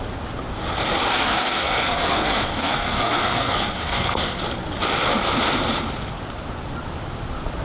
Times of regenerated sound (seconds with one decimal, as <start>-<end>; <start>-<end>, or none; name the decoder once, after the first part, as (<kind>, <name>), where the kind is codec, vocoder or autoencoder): 1.1-4.4 (codec, SNAC)